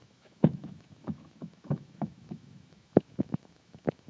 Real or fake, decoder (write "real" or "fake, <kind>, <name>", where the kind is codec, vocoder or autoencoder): fake, autoencoder, DAC-VAE